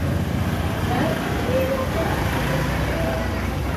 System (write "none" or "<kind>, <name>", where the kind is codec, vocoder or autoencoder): vocoder, BigVGAN v2